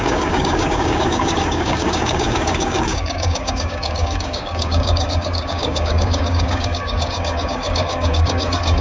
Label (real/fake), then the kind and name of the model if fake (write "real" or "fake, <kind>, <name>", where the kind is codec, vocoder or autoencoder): fake, codec, DAC